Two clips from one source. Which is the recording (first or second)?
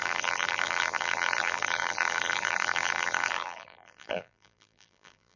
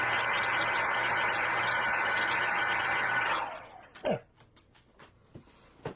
second